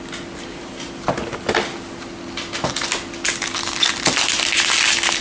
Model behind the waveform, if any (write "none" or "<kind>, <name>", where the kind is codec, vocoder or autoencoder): none